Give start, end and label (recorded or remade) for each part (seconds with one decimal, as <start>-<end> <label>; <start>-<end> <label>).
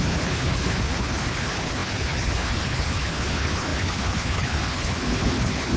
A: 0.0-5.8 remade